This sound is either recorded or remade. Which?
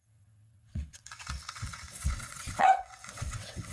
remade